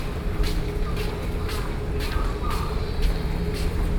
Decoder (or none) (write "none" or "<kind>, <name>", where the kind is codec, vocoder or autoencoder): none